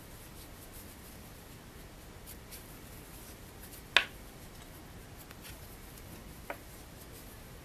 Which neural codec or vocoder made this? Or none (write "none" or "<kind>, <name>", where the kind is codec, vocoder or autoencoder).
none